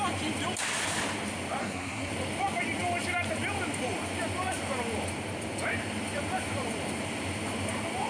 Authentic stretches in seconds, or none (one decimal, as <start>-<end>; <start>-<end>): 0.0-1.6; 2.1-8.1

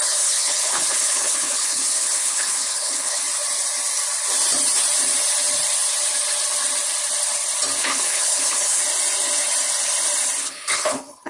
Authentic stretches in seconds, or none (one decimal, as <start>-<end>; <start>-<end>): 3.2-7.8; 8.8-10.4

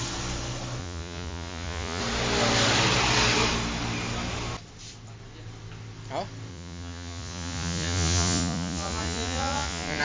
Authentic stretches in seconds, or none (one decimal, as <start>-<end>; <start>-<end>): 0.0-0.8; 2.0-6.5